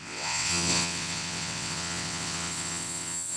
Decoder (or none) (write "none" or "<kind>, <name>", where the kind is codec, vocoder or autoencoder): vocoder, WaveNeXt